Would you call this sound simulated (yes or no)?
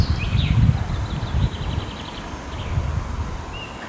no